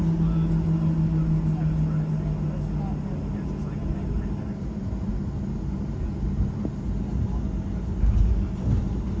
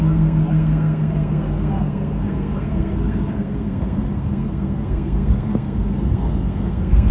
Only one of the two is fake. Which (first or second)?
second